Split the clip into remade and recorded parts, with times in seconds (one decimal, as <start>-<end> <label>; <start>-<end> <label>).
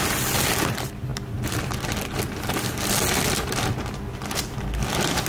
0.0-5.3 recorded